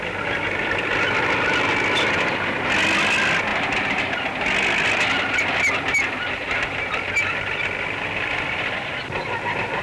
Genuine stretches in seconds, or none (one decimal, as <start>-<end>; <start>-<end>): 0.0-9.8